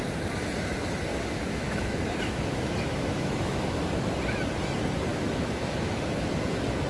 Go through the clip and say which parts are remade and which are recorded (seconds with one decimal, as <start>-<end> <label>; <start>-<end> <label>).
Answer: 0.0-1.1 recorded; 1.1-4.1 remade; 4.1-5.1 recorded; 5.1-6.0 remade; 6.0-6.9 recorded